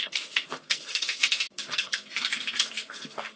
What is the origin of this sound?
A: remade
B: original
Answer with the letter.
A